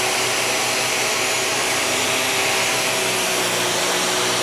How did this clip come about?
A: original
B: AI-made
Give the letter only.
A